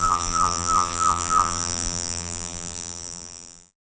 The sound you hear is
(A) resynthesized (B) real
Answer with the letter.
A